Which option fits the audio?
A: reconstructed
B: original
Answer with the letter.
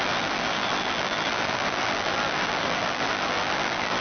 A